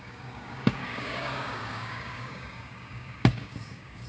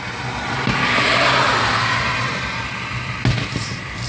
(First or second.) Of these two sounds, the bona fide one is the second